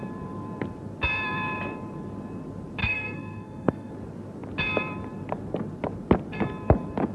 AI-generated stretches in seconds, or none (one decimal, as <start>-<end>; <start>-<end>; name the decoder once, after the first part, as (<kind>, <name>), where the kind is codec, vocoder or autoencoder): 2.8-3.9 (codec, SNAC)